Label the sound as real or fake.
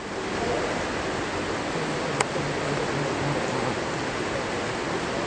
real